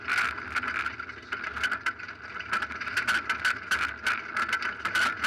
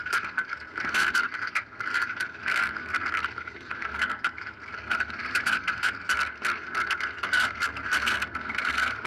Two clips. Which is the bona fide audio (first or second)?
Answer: first